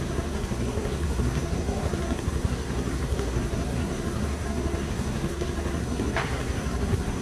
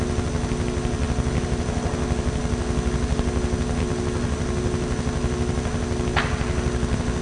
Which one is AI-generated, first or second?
first